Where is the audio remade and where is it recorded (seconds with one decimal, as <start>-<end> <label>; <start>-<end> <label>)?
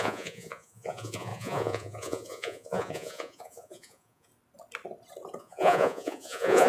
0.0-4.3 remade; 4.3-5.4 recorded; 5.4-6.7 remade